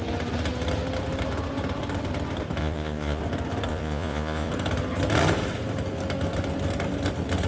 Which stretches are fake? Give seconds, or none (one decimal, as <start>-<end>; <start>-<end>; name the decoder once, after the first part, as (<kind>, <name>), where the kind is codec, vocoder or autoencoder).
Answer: 2.6-3.2 (vocoder, Vocos); 3.7-4.5